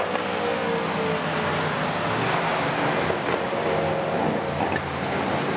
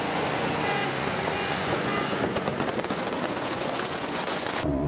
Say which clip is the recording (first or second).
first